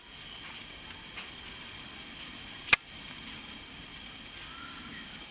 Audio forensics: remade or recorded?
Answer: recorded